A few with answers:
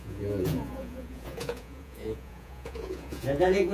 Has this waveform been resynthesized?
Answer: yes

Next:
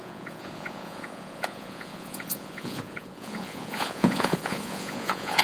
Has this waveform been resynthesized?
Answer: yes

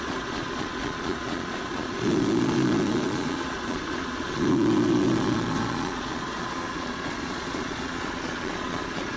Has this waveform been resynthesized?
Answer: yes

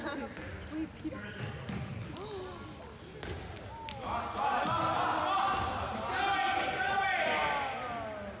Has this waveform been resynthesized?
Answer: no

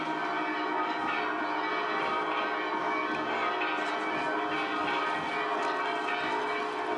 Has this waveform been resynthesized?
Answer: no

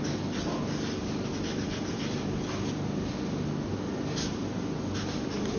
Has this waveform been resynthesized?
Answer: no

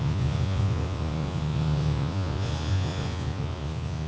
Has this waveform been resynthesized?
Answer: yes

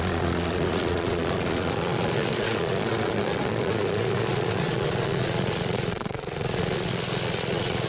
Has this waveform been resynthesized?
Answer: yes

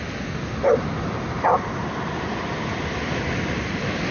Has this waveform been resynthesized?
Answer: no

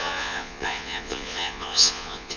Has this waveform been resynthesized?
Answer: yes